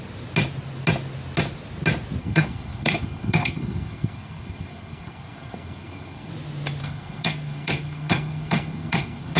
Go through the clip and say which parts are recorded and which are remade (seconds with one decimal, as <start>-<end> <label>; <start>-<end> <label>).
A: 0.0-2.2 recorded; 2.2-6.3 remade; 6.3-6.8 recorded; 6.8-9.4 remade